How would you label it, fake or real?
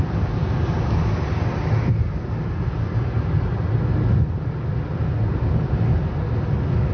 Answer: real